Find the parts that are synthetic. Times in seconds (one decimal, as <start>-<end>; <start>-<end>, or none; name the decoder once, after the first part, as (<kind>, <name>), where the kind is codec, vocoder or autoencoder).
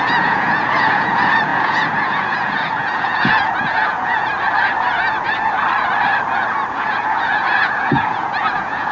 0.0-4.3 (vocoder, Vocos); 6.7-8.9